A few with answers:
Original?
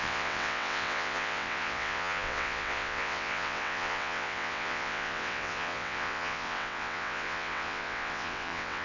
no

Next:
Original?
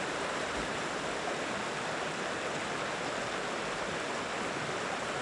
yes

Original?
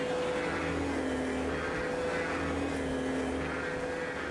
yes